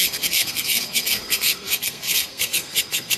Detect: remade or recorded remade